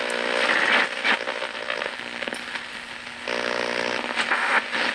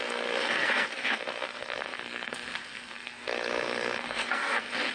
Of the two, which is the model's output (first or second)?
second